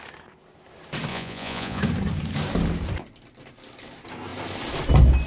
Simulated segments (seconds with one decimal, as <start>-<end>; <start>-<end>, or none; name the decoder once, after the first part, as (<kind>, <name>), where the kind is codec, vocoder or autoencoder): 1.1-1.8 (vocoder, Vocos)